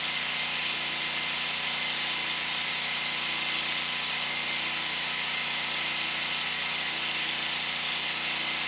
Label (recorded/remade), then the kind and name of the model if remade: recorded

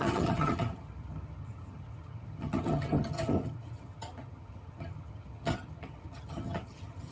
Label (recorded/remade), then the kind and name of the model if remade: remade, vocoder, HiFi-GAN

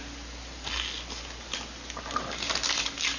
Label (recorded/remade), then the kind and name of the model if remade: recorded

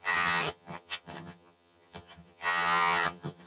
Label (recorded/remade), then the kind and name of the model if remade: remade, vocoder, HiFi-GAN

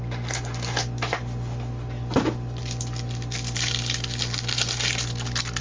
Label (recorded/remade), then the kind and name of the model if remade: recorded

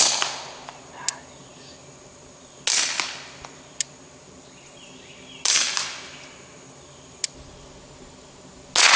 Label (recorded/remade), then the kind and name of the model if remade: recorded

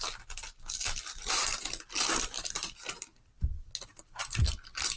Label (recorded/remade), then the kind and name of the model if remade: recorded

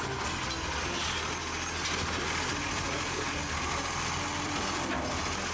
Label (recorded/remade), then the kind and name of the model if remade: recorded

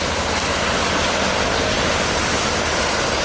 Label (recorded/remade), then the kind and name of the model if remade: recorded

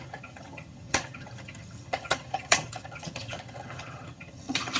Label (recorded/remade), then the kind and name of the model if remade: remade, vocoder, HiFi-GAN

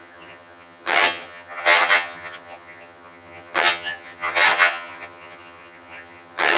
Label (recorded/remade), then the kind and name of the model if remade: remade, vocoder, HiFi-GAN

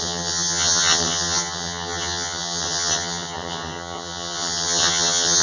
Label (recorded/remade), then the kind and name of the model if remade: remade, vocoder, HiFi-GAN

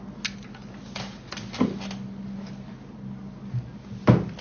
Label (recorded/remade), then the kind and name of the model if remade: recorded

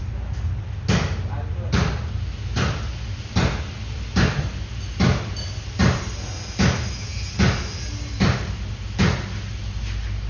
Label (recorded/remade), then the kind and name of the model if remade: recorded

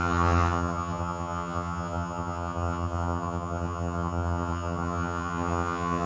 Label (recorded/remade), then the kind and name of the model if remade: remade, vocoder, HiFi-GAN